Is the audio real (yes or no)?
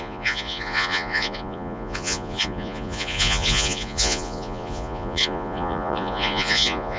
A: no